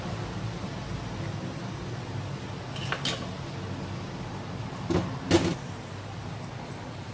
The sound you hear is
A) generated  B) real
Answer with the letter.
B